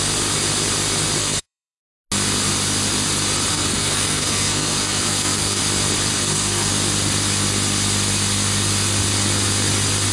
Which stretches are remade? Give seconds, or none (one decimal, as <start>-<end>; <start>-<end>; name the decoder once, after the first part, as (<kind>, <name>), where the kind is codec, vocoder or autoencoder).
1.2-1.8 (codec, SNAC); 3.5-5.6; 6.1-6.7